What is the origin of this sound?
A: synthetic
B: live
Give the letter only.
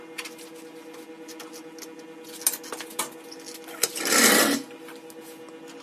B